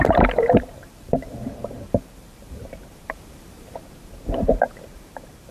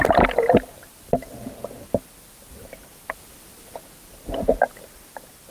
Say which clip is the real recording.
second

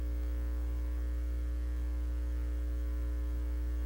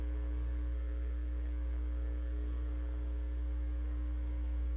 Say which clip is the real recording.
first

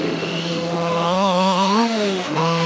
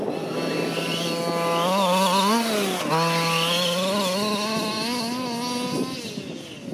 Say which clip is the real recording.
second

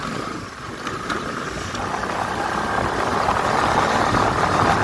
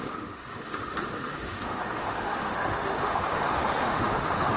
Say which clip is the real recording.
first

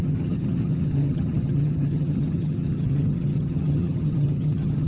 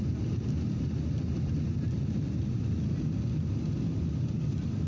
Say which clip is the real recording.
second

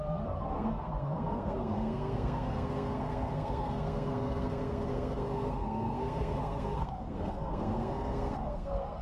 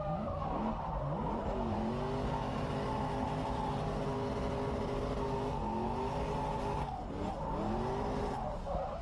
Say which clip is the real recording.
second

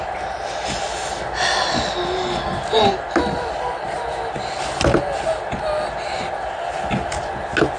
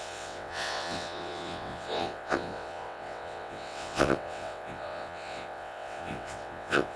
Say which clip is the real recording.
first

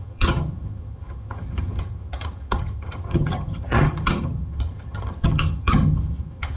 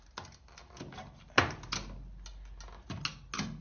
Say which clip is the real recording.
second